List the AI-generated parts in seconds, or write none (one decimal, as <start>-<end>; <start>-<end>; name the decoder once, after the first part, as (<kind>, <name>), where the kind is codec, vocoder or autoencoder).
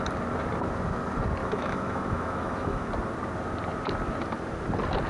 1.4-2.9 (autoencoder, DAC-VAE)